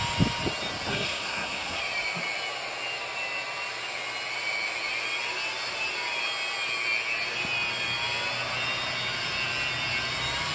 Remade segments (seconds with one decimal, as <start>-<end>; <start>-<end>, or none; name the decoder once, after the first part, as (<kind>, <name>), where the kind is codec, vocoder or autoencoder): 0.9-1.8 (codec, SNAC)

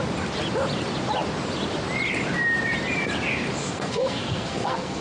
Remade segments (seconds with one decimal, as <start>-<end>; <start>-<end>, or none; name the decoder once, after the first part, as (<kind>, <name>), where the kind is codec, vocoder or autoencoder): 3.6-5.0 (codec, SNAC)

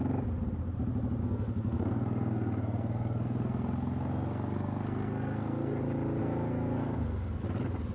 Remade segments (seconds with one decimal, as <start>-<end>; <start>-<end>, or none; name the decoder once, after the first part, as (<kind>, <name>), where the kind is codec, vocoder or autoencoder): 1.2-5.8 (codec, SNAC); 6.2-7.4

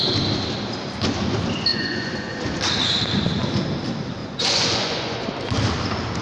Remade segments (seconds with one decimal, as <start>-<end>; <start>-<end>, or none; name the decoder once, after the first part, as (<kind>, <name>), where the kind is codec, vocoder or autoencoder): 1.7-2.4 (vocoder, Vocos); 4.2-5.2

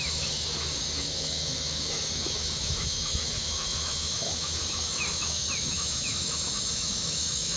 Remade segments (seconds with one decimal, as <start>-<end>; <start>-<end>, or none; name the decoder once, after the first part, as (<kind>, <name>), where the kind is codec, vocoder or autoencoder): 0.0-7.6 (autoencoder, DAC-VAE)

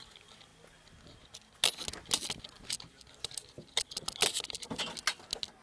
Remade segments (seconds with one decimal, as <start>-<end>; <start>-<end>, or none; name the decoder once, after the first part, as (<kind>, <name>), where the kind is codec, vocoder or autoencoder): none

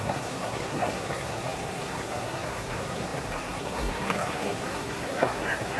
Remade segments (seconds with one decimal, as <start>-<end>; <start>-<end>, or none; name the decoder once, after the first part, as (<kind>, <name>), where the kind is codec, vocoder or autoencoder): 0.0-5.8 (codec, SNAC)